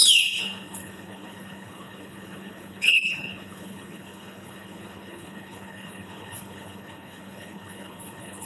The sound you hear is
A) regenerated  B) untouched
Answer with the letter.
A